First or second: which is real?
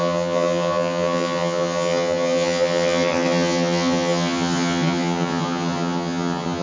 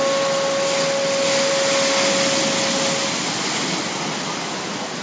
second